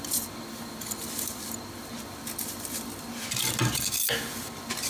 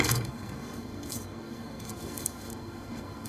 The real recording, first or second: first